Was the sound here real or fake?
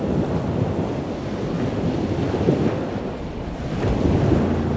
real